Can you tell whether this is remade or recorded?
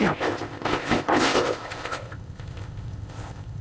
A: remade